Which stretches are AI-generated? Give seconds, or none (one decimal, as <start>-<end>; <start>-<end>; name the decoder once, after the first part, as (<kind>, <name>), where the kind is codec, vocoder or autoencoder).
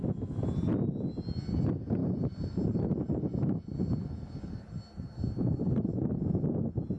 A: 2.0-6.1 (vocoder, BigVGAN v2)